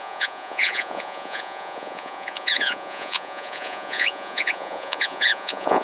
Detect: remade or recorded remade